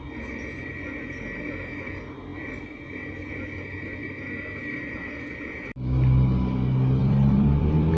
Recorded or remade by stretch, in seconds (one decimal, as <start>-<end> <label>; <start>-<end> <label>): 0.0-7.0 recorded; 7.0-8.0 remade